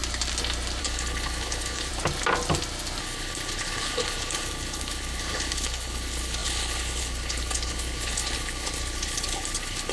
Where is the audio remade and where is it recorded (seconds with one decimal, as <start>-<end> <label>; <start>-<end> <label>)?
0.0-0.8 recorded; 0.8-1.9 remade; 1.9-3.0 recorded; 3.0-9.9 remade

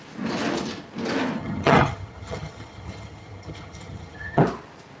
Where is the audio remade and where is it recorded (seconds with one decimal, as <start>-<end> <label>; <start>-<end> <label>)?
0.0-1.4 recorded; 1.4-4.4 remade; 4.4-5.0 recorded

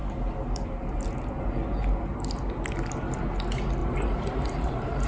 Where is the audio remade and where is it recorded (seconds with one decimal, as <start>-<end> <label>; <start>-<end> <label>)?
0.0-3.8 recorded; 3.8-5.1 remade

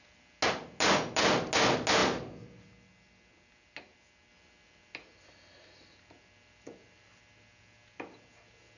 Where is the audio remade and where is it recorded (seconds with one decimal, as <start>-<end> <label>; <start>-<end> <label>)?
0.0-8.8 recorded

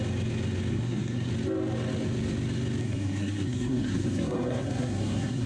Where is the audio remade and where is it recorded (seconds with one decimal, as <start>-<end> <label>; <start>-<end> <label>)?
0.0-0.7 recorded; 0.7-1.3 remade; 1.3-2.8 recorded; 2.8-5.5 remade

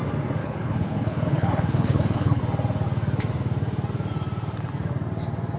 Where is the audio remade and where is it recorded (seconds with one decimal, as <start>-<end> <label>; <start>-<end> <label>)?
0.0-0.4 recorded; 0.4-2.4 remade; 2.4-5.6 recorded

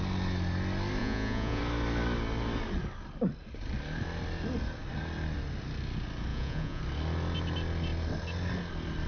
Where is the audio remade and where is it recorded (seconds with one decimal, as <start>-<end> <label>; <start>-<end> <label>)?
0.0-1.0 recorded; 1.0-1.6 remade; 1.6-6.3 recorded; 6.3-6.8 remade; 6.8-9.1 recorded

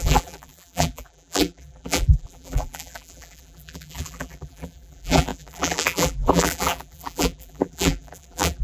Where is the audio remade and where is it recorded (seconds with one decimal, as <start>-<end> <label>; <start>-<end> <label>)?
0.0-8.6 remade